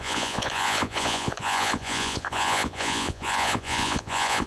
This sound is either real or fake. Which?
fake